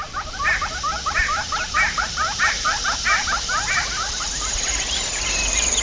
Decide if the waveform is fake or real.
fake